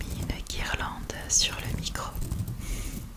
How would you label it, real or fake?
real